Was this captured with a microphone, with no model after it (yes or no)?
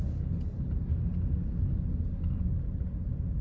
yes